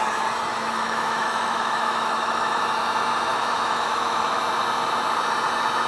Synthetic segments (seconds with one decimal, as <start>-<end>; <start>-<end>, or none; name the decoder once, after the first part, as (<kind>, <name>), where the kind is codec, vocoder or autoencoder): 0.5-2.6 (autoencoder, DAC-VAE); 3.3-4.4